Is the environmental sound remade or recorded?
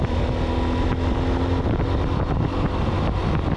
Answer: recorded